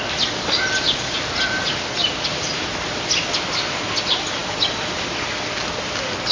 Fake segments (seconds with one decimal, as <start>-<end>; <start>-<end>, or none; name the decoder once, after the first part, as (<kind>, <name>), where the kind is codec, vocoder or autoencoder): 2.0-2.7 (vocoder, BigVGAN v2)